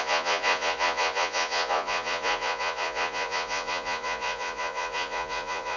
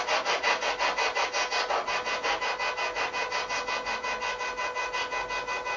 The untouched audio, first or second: second